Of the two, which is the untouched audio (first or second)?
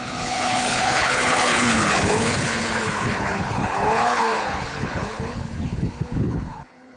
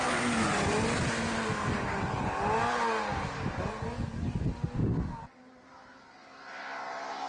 second